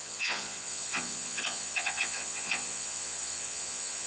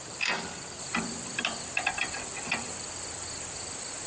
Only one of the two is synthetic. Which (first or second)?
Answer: first